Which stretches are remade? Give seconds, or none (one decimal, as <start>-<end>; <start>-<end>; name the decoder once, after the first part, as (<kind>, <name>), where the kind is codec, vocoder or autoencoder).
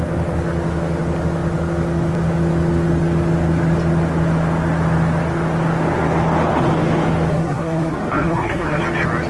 7.3-8.8 (codec, SNAC)